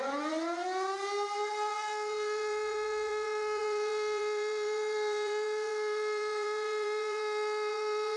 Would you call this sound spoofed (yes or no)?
yes